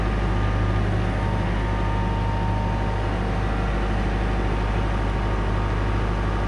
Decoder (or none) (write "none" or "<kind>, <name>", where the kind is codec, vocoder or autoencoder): none